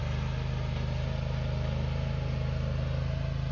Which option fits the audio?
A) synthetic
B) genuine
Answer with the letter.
B